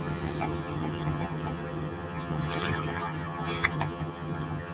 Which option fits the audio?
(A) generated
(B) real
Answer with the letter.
A